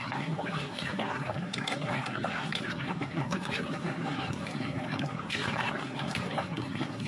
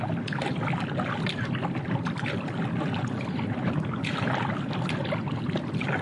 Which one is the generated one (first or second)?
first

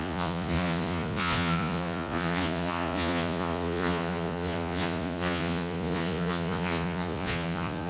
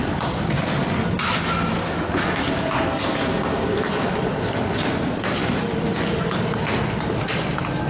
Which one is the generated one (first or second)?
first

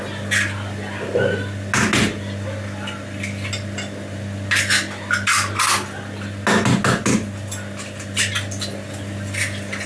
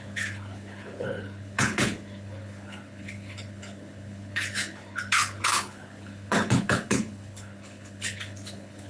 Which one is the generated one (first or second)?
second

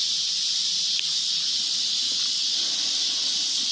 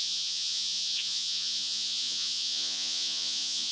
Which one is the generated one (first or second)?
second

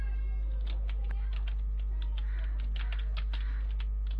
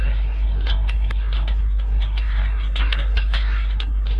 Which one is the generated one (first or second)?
second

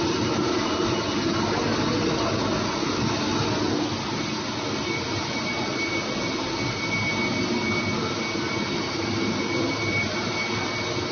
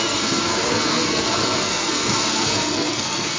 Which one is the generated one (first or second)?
second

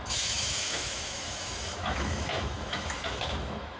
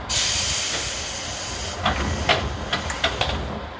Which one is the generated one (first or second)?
first